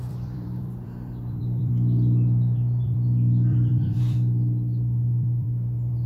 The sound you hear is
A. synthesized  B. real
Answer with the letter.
A